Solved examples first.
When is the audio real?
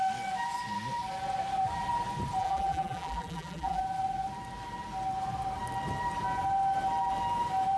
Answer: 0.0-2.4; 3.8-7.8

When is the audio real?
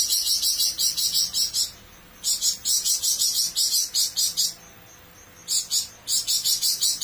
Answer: 0.0-6.1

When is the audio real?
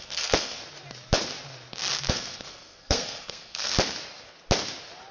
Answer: 0.6-2.1; 3.7-5.1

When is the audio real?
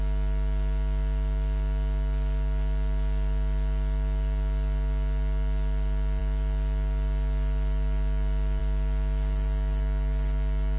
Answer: 0.0-10.8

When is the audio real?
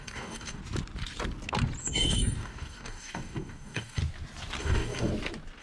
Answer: 0.6-1.8; 4.0-4.6; 5.1-5.6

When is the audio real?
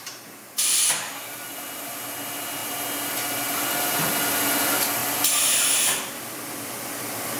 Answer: 0.0-7.4